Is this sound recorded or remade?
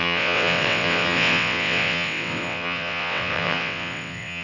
remade